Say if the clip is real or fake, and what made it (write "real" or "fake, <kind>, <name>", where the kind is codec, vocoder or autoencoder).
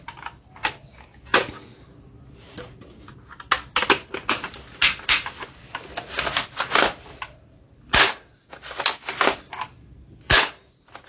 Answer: real